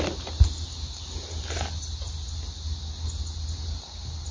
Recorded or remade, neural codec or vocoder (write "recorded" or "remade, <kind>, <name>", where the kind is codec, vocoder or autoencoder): recorded